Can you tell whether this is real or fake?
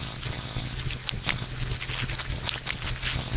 real